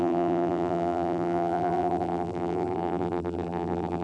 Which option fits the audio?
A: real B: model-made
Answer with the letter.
B